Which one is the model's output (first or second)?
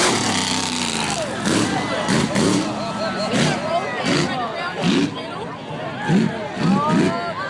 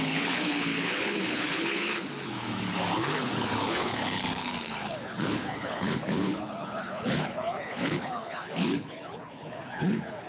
second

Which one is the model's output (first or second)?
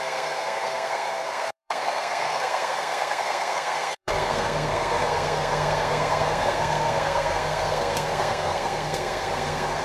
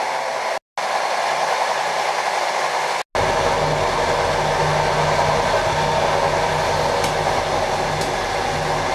first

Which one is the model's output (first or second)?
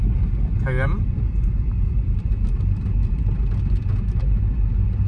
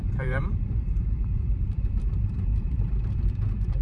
second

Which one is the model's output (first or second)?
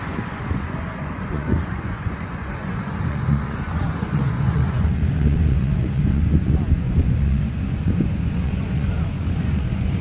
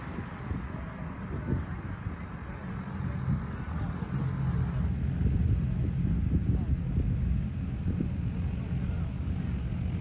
first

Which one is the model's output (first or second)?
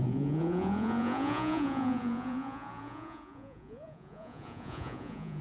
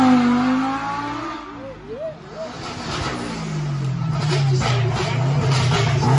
first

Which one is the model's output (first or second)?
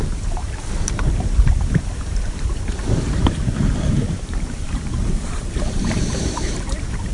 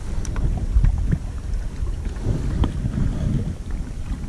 first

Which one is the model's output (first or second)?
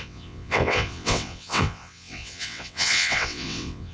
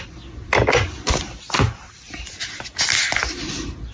first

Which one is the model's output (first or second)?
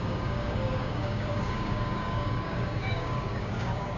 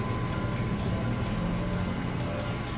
first